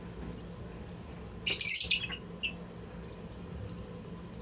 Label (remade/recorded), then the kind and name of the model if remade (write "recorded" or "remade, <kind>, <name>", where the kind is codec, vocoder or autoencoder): recorded